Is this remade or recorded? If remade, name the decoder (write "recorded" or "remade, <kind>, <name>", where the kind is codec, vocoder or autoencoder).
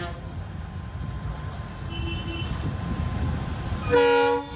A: recorded